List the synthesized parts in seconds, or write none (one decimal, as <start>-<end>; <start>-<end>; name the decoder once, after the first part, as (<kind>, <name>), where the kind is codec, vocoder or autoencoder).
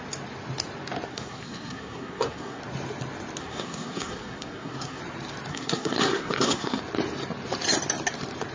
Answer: 1.1-2.6 (codec, SNAC); 3.4-5.0; 5.5-6.8